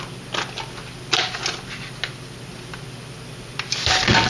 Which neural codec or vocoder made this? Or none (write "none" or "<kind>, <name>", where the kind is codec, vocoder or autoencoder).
none